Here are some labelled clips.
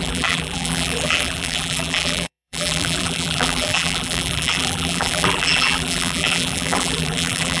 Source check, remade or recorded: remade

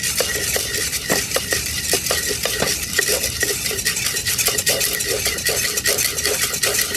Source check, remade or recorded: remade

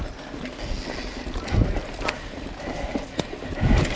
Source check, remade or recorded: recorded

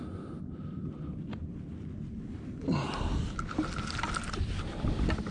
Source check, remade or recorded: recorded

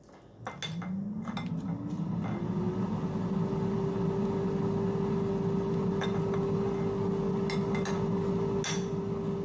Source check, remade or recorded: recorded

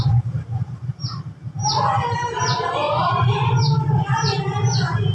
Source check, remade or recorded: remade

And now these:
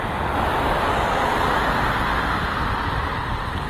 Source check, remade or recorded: recorded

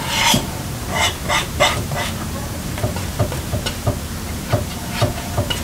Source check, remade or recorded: remade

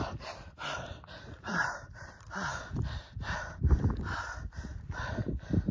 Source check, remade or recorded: remade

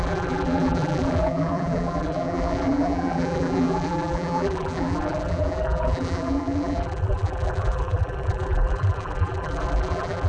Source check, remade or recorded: remade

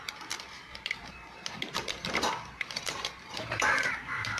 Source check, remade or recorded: remade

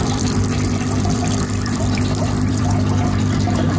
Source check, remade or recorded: remade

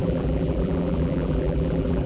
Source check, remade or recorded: remade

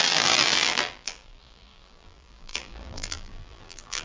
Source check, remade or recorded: remade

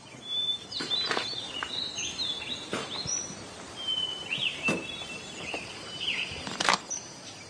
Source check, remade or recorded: remade